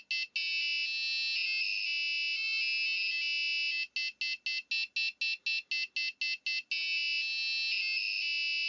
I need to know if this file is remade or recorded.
recorded